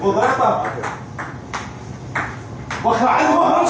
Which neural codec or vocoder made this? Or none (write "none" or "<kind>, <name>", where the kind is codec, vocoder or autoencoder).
none